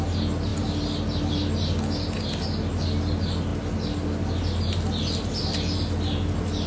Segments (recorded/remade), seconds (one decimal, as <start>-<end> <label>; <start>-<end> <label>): 0.0-6.7 recorded